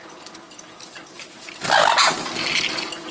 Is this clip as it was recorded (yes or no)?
yes